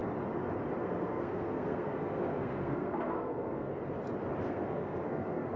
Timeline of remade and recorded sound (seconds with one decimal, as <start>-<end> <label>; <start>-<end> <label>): 0.0-0.8 recorded; 0.8-3.7 remade; 3.7-4.4 recorded; 4.4-5.6 remade